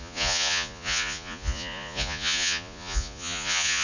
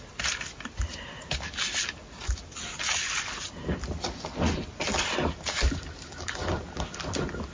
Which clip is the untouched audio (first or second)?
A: second